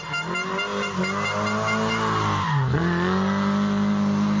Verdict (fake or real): real